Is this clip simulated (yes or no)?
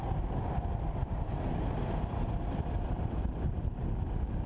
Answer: no